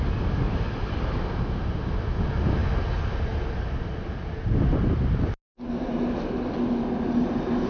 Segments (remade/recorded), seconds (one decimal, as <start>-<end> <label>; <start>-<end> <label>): 0.0-7.7 recorded